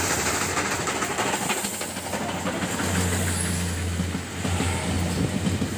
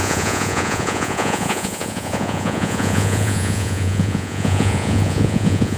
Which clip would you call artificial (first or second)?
second